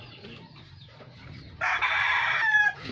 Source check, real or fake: fake